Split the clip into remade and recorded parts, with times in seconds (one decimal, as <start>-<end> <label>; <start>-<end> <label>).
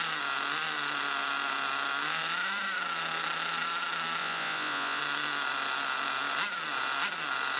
0.0-4.2 recorded; 4.2-5.0 remade; 5.0-7.6 recorded